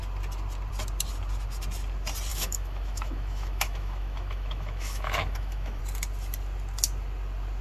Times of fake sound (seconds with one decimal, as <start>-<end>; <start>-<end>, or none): 2.3-5.8